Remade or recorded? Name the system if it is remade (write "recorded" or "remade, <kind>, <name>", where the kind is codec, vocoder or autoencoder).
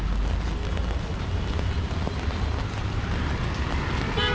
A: recorded